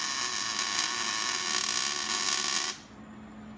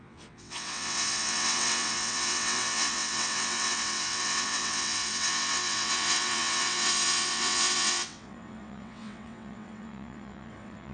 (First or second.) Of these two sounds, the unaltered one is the first